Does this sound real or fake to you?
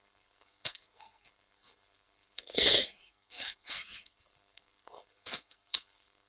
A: fake